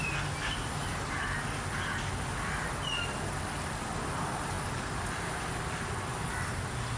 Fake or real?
real